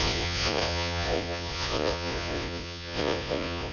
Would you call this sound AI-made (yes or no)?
yes